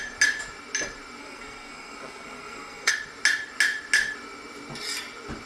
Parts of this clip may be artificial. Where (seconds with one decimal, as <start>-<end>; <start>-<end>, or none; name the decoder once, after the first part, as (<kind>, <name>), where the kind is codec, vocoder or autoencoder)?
1.2-2.9 (codec, SNAC)